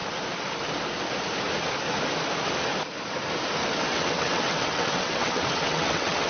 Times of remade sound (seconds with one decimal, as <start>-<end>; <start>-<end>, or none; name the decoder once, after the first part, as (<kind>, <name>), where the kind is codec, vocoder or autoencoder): 3.8-6.3 (vocoder, WaveNeXt)